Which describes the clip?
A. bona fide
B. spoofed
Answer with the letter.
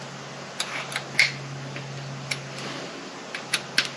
A